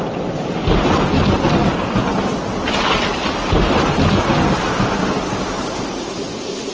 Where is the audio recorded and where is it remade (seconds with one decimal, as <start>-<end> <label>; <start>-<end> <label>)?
0.0-6.7 recorded